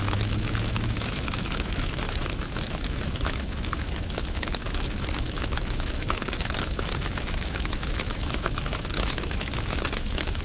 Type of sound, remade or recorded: remade